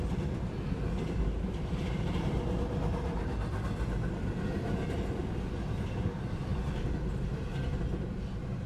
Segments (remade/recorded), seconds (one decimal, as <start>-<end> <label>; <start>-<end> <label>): 0.0-8.7 recorded